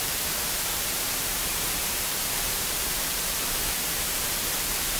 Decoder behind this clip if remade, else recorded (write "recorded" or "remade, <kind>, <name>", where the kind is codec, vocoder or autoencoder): remade, vocoder, BigVGAN v2